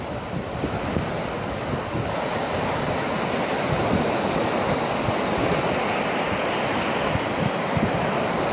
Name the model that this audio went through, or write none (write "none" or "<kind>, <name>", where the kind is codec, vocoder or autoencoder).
none